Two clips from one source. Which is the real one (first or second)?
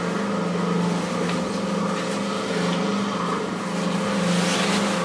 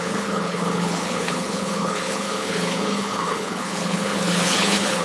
first